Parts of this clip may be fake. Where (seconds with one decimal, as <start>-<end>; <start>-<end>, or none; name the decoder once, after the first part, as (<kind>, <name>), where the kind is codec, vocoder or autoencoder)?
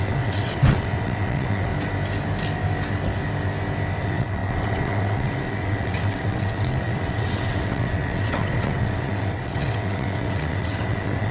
0.0-1.7 (vocoder, WaveNeXt); 4.0-11.3